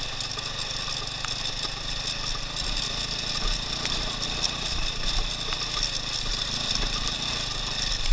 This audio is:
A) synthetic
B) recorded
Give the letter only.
B